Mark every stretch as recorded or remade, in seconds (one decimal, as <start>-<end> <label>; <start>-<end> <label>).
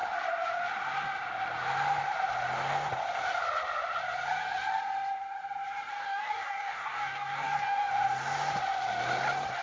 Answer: 0.0-5.9 recorded; 5.9-7.9 remade; 7.9-9.6 recorded